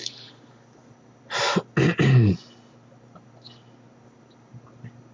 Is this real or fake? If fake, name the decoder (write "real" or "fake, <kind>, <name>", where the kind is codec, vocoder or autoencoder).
real